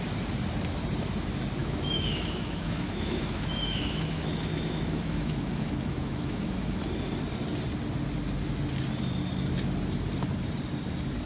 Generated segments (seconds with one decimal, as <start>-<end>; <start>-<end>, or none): 1.6-6.8